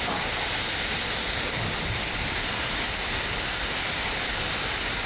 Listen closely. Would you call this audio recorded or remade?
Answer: recorded